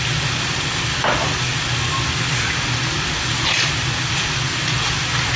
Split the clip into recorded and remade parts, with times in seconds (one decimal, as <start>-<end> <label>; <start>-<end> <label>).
0.0-5.4 recorded